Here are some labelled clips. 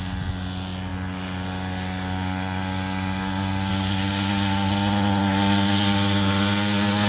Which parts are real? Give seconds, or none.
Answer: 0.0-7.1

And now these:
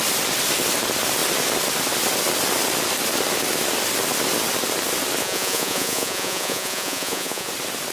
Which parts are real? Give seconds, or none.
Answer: 0.0-5.2; 7.5-7.9